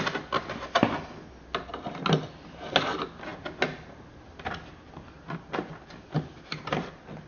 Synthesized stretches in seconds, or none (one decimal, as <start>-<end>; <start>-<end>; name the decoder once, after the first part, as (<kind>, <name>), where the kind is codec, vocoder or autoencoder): none